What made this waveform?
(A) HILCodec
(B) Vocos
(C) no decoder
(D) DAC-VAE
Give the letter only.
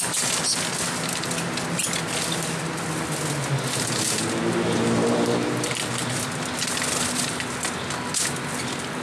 C